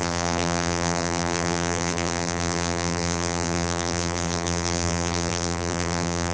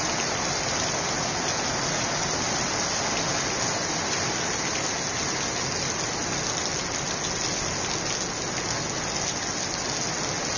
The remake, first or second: first